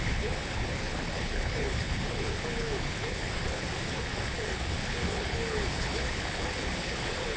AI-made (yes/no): yes